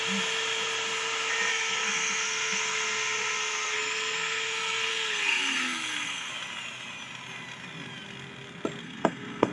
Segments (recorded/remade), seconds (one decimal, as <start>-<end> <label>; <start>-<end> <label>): 0.0-1.5 recorded; 1.5-6.3 remade; 6.3-8.8 recorded; 8.8-9.5 remade